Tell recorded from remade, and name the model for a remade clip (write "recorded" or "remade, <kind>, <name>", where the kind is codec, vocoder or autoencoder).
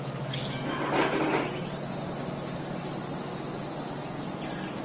recorded